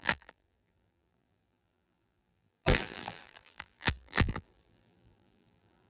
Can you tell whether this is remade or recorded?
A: remade